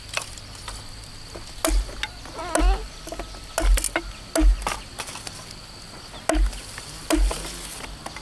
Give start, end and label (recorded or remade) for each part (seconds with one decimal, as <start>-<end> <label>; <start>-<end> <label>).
0.0-8.2 recorded